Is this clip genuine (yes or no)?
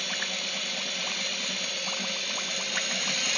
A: yes